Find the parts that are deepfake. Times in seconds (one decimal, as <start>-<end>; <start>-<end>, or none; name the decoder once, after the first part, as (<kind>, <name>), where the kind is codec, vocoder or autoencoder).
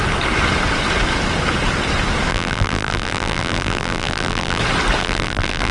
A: 2.3-4.6 (vocoder, BigVGAN v2); 5.0-5.7